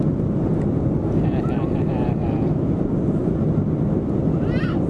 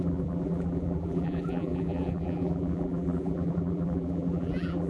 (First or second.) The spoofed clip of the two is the second